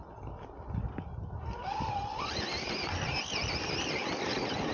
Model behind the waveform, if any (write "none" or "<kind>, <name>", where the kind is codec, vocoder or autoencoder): none